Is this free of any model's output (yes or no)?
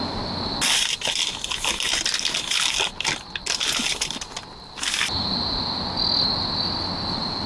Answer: yes